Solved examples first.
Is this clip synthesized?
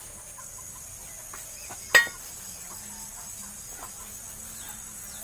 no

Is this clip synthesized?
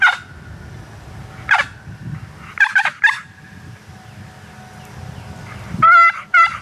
no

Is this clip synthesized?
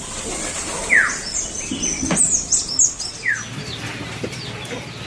no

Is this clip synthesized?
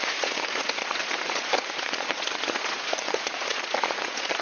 yes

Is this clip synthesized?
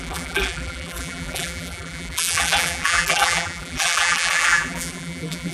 yes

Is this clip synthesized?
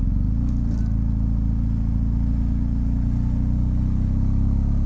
no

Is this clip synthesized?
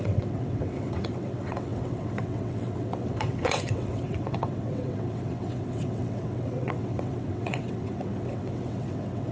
yes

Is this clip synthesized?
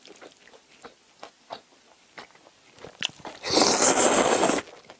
no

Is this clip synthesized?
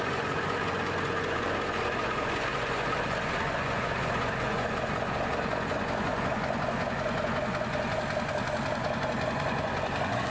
yes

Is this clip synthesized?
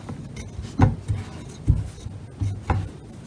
no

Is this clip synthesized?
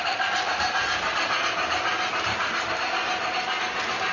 no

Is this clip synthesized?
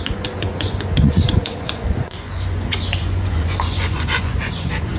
yes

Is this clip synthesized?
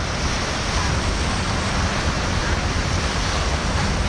no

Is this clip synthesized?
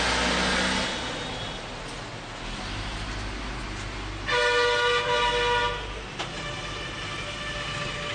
no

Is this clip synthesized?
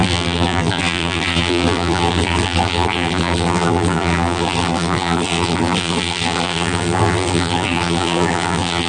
yes